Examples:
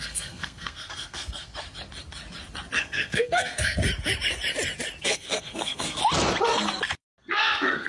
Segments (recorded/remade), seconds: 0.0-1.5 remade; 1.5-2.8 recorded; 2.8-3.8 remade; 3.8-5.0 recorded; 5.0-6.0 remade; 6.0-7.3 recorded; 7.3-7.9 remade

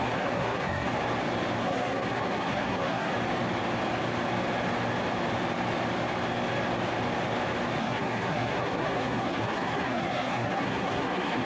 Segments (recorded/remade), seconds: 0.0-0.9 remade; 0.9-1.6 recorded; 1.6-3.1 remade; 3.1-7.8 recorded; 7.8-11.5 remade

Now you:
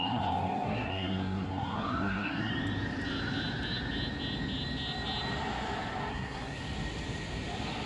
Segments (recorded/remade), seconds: 0.0-2.5 remade; 2.5-6.1 recorded; 6.1-6.6 remade; 6.6-7.9 recorded